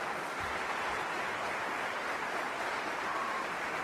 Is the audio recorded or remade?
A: recorded